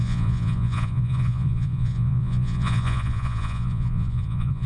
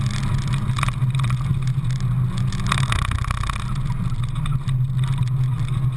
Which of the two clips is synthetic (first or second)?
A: first